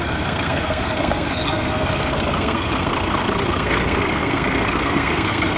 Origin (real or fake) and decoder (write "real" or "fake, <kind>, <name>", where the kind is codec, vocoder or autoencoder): fake, codec, SNAC